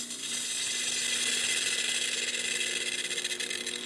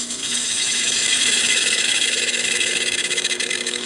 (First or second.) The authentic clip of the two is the first